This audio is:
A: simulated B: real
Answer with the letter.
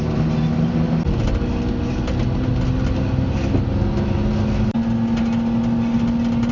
B